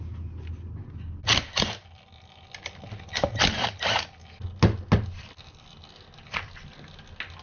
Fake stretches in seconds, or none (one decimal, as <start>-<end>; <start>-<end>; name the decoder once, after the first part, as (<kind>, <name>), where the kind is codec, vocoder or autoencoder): none